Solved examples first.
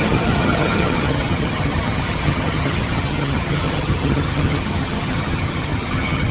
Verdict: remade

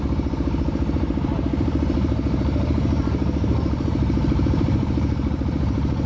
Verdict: remade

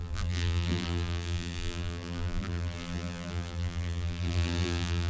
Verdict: remade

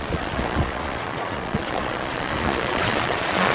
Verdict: remade